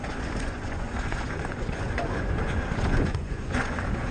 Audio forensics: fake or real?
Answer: fake